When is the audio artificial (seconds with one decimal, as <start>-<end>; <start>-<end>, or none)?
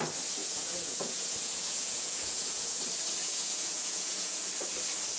0.4-2.8; 3.2-4.5